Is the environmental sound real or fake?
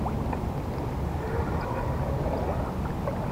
real